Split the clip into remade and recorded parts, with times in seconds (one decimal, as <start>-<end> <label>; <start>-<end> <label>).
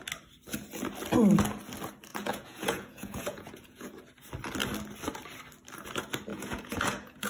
0.0-2.1 recorded; 2.1-3.9 remade; 3.9-6.3 recorded; 6.3-7.3 remade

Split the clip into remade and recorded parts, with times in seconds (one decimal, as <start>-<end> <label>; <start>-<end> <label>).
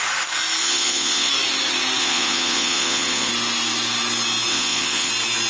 0.0-0.6 recorded; 0.6-1.3 remade; 1.3-2.0 recorded; 2.0-3.3 remade; 3.3-4.5 recorded; 4.5-5.1 remade; 5.1-5.5 recorded